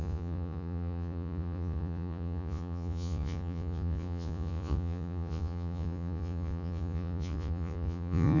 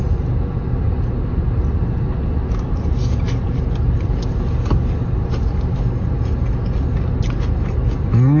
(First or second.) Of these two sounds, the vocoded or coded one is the first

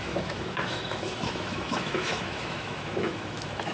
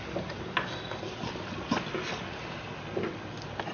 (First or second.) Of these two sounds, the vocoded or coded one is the first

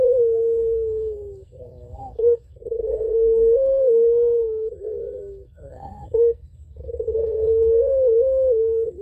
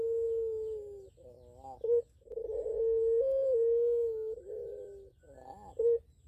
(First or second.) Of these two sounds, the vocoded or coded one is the first